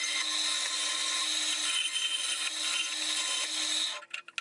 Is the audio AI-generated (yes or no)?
no